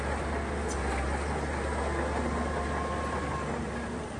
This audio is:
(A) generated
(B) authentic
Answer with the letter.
B